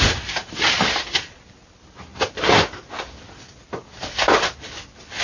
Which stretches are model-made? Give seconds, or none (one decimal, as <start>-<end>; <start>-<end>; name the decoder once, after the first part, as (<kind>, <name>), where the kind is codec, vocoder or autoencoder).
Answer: none